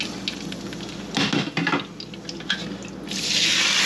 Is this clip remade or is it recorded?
recorded